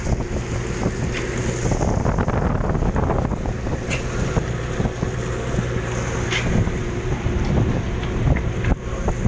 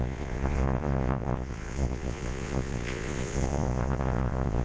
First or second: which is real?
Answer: first